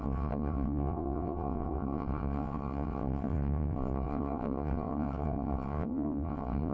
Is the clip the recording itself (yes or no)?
no